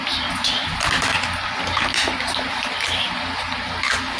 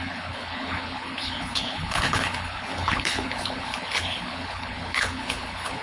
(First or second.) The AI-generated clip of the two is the second